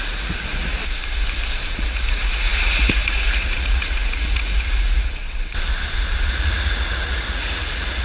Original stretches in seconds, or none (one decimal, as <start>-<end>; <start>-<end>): 0.8-1.7; 5.2-6.3